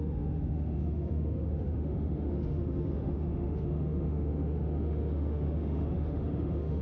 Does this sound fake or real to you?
fake